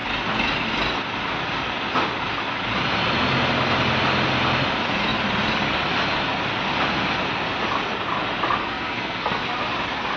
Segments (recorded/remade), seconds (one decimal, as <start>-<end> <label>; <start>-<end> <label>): 0.0-8.6 recorded; 8.6-9.4 remade; 9.4-10.2 recorded